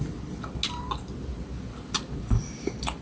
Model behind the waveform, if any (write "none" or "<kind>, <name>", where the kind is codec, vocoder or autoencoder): none